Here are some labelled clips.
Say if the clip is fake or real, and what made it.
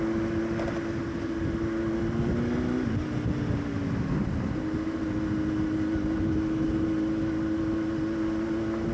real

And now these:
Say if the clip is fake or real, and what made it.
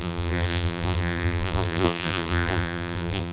fake, vocoder, BigVGAN v2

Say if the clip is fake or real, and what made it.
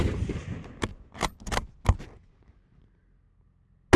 real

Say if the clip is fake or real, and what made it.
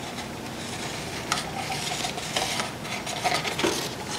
real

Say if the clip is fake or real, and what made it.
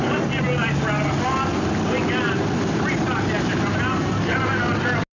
real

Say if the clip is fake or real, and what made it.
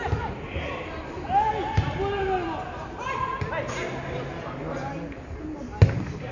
real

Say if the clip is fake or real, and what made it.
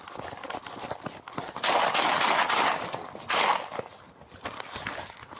real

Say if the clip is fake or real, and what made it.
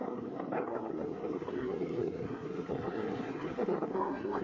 fake, codec, SNAC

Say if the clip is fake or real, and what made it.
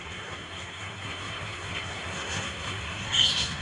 fake, codec, SNAC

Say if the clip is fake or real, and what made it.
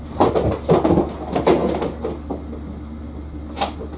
real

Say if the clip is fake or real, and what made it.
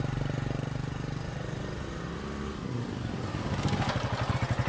real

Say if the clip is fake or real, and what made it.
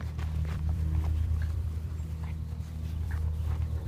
fake, vocoder, BigVGAN v2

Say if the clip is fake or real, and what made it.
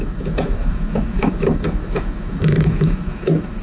fake, autoencoder, DAC-VAE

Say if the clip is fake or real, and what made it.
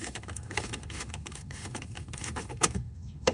fake, autoencoder, DAC-VAE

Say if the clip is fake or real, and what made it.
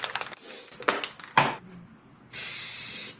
real